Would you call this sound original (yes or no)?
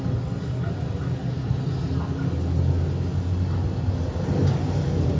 yes